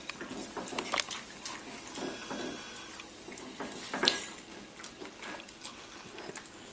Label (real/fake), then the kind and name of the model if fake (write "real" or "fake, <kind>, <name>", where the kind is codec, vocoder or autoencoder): real